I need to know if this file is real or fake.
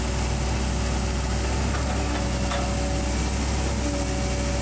real